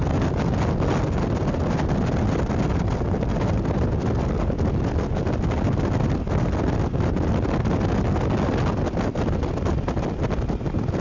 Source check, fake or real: real